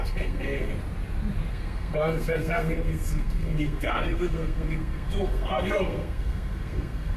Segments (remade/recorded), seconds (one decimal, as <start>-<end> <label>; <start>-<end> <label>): 0.0-0.7 remade; 0.7-1.5 recorded; 1.5-7.2 remade